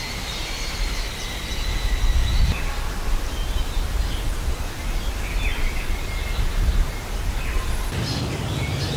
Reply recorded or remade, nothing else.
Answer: recorded